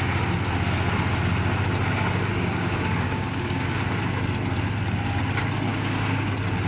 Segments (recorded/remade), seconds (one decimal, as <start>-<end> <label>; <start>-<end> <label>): 0.0-2.3 recorded; 2.3-3.8 remade; 3.8-5.7 recorded; 5.7-6.3 remade; 6.3-6.7 recorded

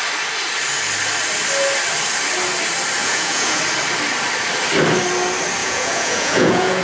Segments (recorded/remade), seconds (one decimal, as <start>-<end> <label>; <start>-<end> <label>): 0.0-3.0 recorded; 3.0-3.6 remade; 3.6-5.6 recorded; 5.6-6.8 remade

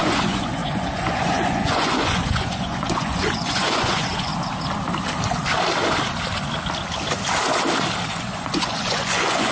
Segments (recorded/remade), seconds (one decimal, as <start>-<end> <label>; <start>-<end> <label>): 0.0-4.3 remade; 4.3-8.1 recorded; 8.1-9.5 remade

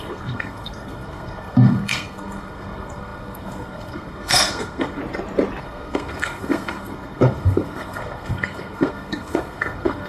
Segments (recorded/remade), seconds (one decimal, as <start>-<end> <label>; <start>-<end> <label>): 0.0-5.0 remade; 5.0-5.6 recorded; 5.6-10.1 remade